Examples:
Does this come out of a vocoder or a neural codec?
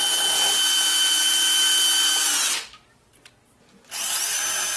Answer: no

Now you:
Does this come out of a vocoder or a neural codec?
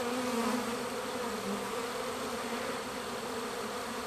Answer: no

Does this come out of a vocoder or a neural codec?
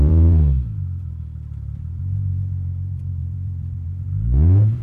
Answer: yes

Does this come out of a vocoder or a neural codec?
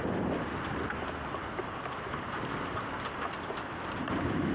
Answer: yes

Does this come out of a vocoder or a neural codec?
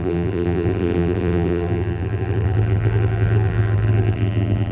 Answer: yes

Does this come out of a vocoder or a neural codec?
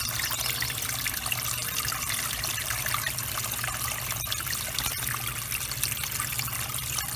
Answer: no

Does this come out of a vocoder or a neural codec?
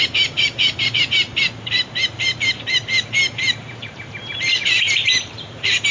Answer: yes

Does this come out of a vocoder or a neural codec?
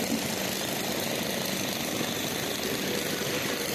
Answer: no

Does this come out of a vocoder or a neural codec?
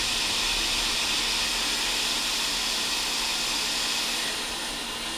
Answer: no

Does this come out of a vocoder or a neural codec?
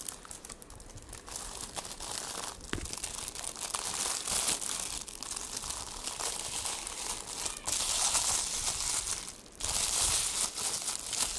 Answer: no